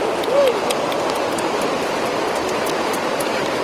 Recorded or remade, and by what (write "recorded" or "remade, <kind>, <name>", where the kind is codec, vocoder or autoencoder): recorded